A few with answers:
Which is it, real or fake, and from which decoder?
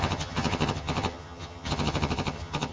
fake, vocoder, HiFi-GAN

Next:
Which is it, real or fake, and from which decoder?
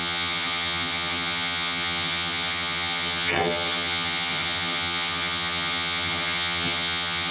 fake, vocoder, HiFi-GAN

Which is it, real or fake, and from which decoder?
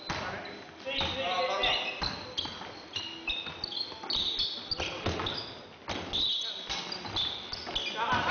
real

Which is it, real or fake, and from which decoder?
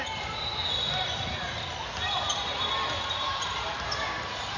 real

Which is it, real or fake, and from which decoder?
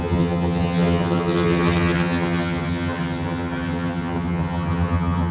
fake, vocoder, HiFi-GAN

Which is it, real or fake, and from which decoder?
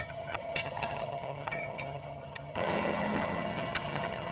fake, vocoder, HiFi-GAN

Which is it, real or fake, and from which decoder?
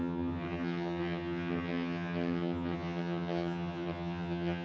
fake, vocoder, HiFi-GAN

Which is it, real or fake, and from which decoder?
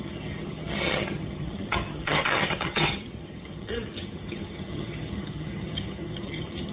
fake, vocoder, HiFi-GAN